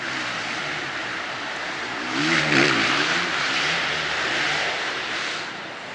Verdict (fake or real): fake